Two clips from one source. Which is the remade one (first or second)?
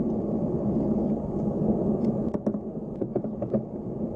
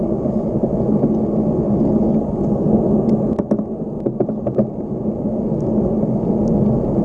first